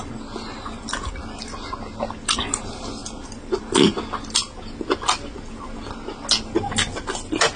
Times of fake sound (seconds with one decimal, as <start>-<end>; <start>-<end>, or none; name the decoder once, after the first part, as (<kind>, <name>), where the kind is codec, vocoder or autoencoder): none